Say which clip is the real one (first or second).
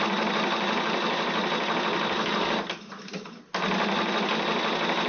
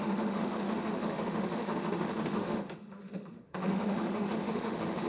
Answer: first